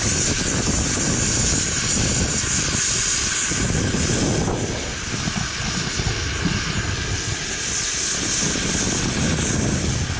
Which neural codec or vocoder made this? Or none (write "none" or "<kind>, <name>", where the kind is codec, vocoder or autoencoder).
none